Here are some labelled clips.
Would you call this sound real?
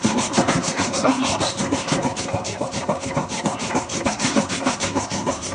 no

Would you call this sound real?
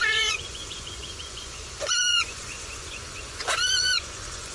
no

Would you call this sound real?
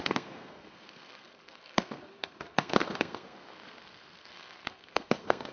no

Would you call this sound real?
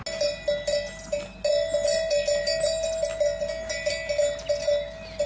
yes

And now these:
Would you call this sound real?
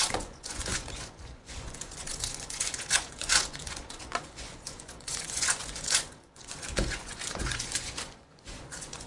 no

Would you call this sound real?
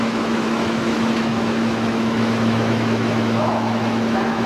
no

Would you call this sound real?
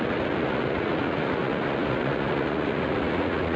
no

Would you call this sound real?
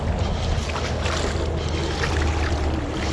yes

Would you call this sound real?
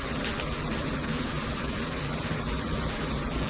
no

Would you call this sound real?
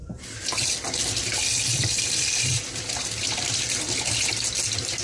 no